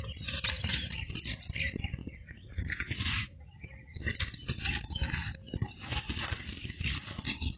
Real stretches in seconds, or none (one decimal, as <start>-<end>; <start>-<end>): 0.0-2.0; 3.7-5.8; 7.0-7.6